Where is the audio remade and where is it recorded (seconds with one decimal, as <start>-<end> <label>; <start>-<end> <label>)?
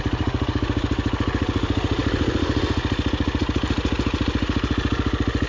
0.0-5.5 recorded